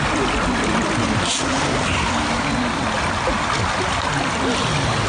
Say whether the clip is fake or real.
real